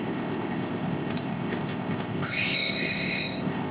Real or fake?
fake